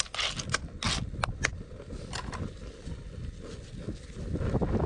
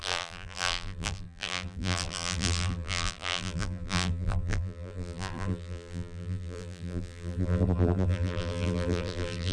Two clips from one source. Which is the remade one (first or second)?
second